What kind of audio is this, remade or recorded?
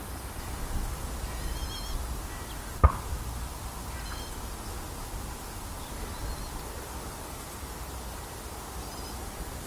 recorded